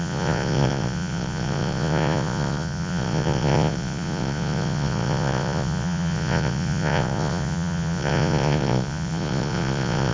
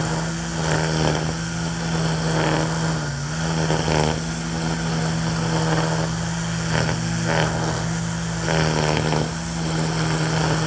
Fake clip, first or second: first